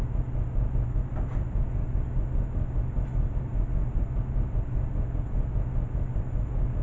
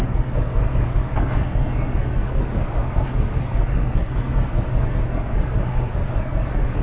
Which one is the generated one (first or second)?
second